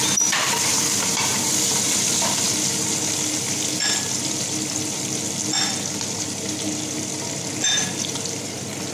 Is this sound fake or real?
real